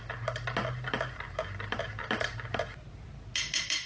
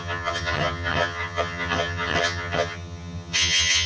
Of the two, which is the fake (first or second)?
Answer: second